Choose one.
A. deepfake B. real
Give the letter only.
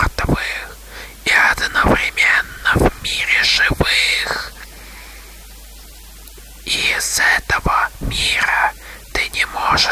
B